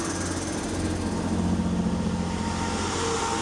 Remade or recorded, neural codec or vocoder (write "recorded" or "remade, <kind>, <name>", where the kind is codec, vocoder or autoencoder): recorded